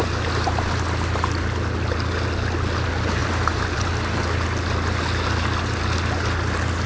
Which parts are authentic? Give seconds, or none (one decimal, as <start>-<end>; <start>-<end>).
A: 0.0-3.2; 3.9-6.9

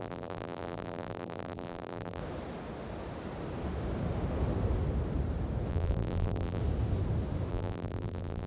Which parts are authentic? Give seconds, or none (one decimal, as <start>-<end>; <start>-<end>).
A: 2.2-5.7; 6.6-7.5

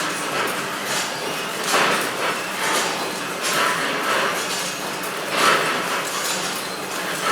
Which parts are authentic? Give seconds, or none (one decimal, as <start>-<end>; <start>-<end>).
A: 0.0-0.8; 4.3-5.5; 6.1-7.3

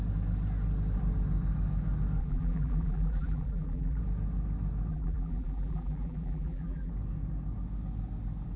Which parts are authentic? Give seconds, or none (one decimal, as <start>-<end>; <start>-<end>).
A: 0.0-2.2; 4.0-4.9; 6.9-8.6

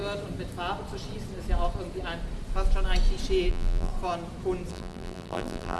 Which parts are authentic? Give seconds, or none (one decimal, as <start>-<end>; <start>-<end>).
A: 0.0-3.5; 3.9-4.7

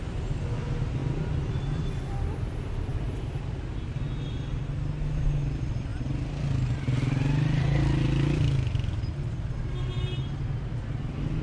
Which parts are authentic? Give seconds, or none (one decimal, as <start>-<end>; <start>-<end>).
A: 0.0-2.9; 3.5-11.4